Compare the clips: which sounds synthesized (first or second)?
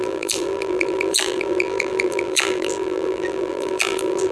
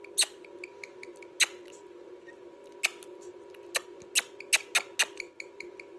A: first